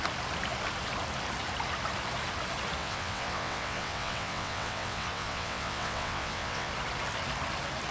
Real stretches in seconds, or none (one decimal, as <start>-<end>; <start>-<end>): 0.0-2.8; 6.7-7.9